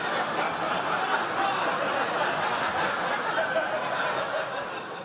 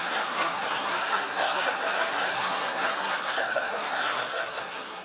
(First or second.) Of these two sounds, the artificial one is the second